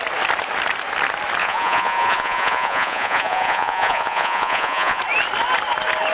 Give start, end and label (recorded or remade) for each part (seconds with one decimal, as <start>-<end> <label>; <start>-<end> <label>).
0.0-1.4 recorded; 1.4-5.0 remade; 5.0-6.1 recorded